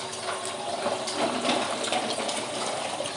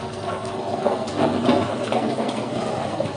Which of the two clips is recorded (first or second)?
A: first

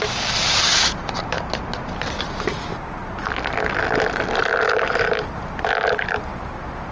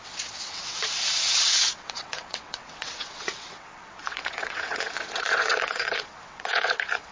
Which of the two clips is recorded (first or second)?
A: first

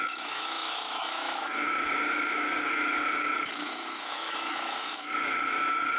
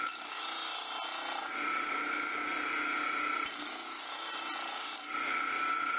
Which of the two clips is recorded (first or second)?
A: second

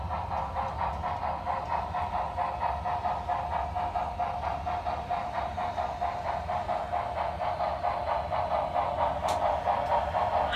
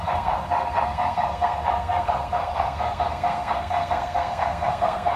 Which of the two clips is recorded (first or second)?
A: first